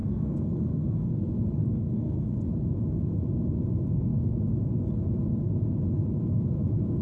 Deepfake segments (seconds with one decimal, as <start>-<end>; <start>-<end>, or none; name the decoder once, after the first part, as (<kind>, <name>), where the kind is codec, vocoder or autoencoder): 0.0-1.2 (codec, SNAC); 1.6-2.3